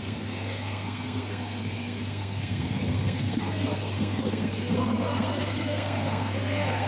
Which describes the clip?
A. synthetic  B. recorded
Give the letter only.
A